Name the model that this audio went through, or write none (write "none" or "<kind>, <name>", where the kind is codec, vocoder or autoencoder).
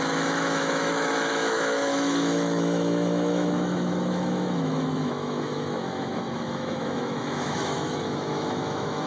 autoencoder, DAC-VAE